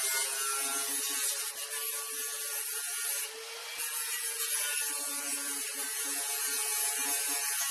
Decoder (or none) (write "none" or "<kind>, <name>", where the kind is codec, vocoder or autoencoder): none